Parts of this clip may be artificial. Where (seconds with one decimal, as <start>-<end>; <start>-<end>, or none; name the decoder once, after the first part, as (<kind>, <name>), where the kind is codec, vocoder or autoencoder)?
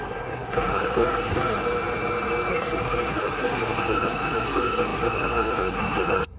0.0-1.6 (codec, SNAC); 2.5-6.4